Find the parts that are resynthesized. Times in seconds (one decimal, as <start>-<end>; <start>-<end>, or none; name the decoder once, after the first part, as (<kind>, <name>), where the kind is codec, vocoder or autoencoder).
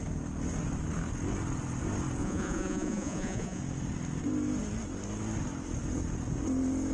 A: 2.2-3.6 (vocoder, Vocos)